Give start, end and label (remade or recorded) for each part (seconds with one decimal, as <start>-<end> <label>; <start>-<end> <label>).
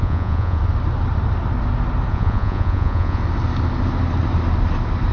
0.0-0.6 remade; 0.6-2.1 recorded; 2.1-3.2 remade; 3.2-5.1 recorded